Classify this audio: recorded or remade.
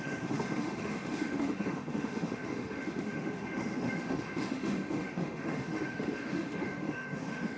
remade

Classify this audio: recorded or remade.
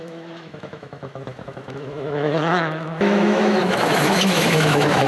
remade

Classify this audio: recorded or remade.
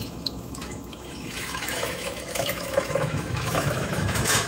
remade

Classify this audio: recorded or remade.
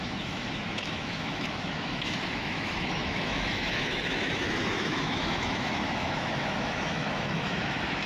remade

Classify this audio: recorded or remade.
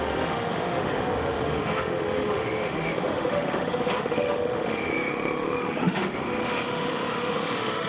remade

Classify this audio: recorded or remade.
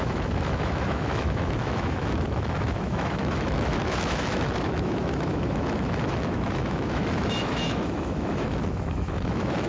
remade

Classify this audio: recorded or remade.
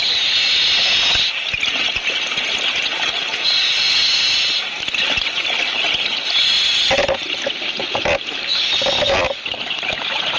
recorded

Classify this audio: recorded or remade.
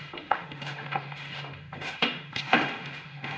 remade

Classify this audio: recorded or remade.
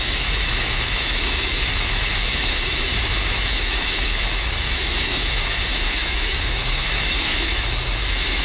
remade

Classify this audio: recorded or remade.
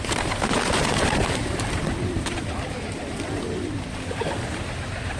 recorded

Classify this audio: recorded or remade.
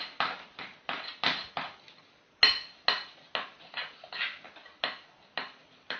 recorded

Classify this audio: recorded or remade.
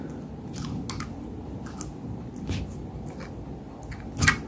recorded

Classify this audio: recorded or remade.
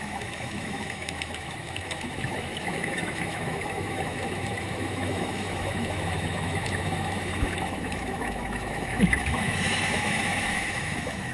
remade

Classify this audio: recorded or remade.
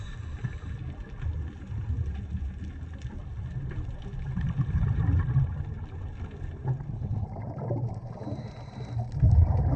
recorded